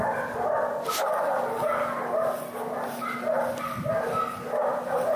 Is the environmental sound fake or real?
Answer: real